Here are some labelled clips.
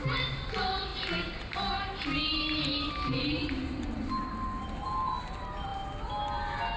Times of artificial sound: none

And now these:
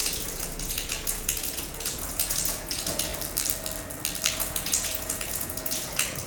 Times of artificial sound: 0.0-3.1 (vocoder, Vocos); 4.3-6.3

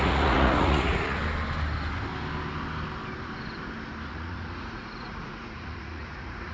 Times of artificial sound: 0.0-1.2 (vocoder, Vocos); 4.1-6.5

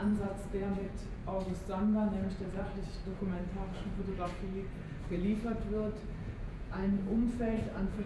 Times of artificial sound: 0.0-1.2 (vocoder, Vocos); 2.3-3.4; 6.2-8.1

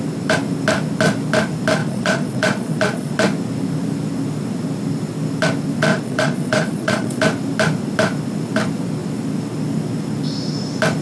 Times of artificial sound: 1.8-3.1 (vocoder, Vocos); 5.9-7.2

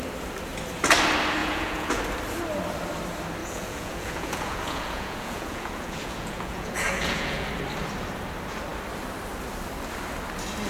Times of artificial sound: 1.4-2.0 (vocoder, Vocos); 3.4-7.5